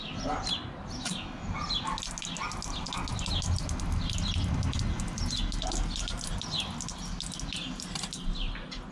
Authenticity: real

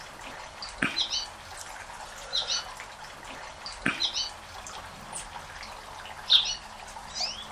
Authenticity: real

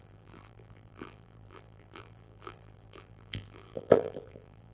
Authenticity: fake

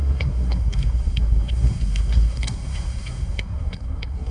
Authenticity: fake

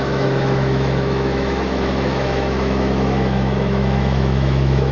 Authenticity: fake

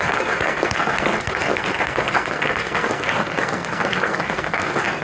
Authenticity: fake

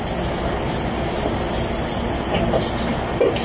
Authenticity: real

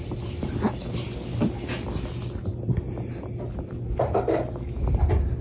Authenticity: real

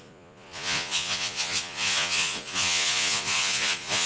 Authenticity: fake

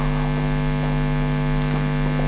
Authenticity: real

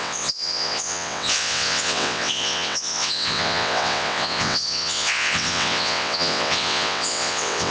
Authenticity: fake